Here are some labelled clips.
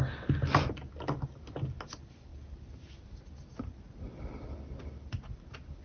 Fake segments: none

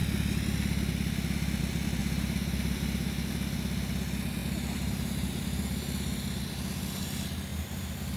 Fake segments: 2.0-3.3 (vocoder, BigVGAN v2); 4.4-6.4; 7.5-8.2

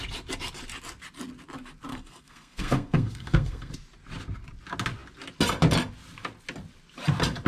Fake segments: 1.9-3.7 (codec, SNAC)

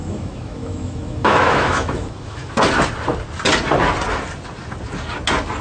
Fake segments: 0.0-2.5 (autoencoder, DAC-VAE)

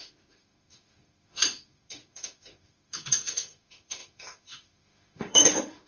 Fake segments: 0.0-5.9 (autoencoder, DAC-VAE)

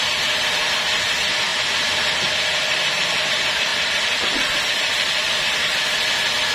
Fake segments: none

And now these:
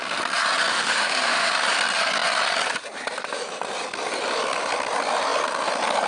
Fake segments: 0.7-1.5 (autoencoder, DAC-VAE)

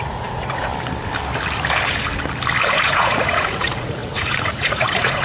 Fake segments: 0.0-0.7 (vocoder, Vocos); 2.6-5.2